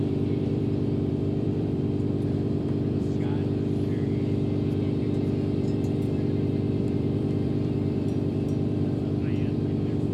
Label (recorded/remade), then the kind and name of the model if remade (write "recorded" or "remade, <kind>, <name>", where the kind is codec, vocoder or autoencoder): remade, vocoder, BigVGAN v2